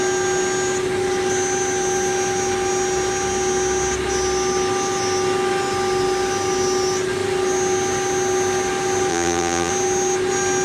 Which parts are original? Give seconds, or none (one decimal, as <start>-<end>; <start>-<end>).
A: 0.0-9.1; 9.7-10.6